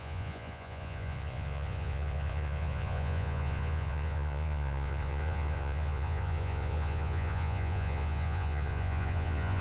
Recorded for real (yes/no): no